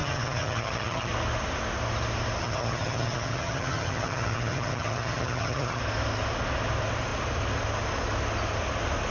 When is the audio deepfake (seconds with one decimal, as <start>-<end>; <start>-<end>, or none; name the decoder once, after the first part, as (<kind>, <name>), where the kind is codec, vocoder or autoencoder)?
0.0-1.1 (vocoder, HiFi-GAN); 2.4-5.8